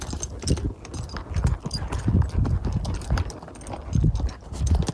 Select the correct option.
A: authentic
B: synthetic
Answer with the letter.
A